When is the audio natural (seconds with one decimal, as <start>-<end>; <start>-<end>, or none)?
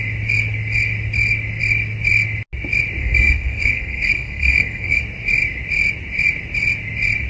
0.0-3.0; 5.0-7.3